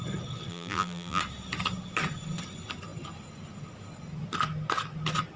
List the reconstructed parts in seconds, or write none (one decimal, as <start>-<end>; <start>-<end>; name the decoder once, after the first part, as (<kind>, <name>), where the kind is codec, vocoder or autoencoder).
0.5-1.2 (vocoder, BigVGAN v2)

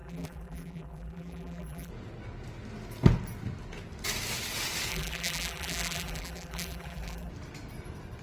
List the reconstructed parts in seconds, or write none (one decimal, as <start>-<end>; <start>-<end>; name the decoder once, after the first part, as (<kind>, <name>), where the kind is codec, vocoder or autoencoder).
0.0-1.9 (vocoder, BigVGAN v2); 4.9-7.3

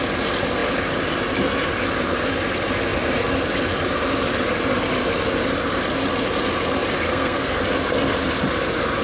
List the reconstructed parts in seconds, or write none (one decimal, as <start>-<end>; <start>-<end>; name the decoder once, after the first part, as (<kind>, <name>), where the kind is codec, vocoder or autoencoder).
7.1-7.6 (codec, SNAC)

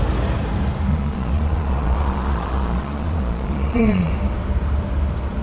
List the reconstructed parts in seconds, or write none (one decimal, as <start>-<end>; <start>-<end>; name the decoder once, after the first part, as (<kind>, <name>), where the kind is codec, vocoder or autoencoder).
0.9-4.1 (vocoder, Vocos)

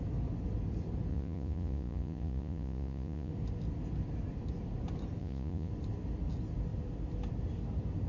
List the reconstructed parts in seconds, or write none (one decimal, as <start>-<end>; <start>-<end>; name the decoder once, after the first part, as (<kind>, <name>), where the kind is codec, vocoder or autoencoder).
1.1-3.3 (vocoder, Vocos); 5.2-5.7

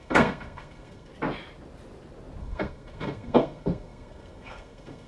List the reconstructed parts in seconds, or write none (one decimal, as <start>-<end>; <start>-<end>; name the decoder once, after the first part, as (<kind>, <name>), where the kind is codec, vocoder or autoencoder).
0.0-1.1 (codec, SNAC); 2.4-5.1

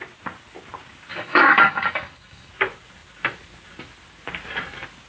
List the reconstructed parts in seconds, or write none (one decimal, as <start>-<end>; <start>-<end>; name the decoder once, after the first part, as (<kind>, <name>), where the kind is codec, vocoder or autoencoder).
1.1-2.5 (codec, DAC)

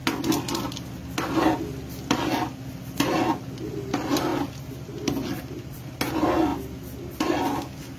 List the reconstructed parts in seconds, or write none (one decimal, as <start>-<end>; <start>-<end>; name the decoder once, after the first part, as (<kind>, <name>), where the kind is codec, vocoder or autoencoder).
none